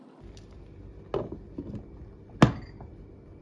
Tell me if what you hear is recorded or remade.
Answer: recorded